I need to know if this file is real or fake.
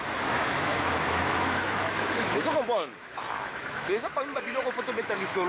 fake